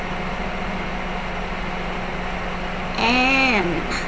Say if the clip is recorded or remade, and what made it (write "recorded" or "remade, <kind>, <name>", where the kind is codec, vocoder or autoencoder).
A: recorded